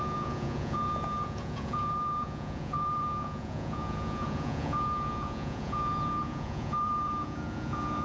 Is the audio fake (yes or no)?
yes